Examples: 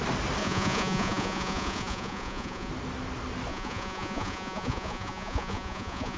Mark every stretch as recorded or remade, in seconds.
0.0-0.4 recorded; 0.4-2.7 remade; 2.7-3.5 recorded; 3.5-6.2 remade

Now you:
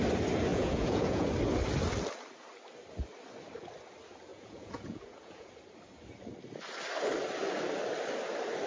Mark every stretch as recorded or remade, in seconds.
0.0-0.5 recorded; 0.5-1.3 remade; 1.3-4.3 recorded; 4.3-5.5 remade; 5.5-8.7 recorded

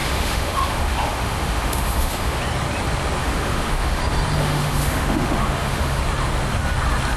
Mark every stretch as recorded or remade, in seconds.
0.0-2.4 remade; 2.4-3.2 recorded; 3.2-4.0 remade; 4.0-4.4 recorded; 4.4-6.0 remade; 6.0-7.2 recorded